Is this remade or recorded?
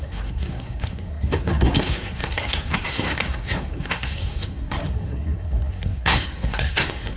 remade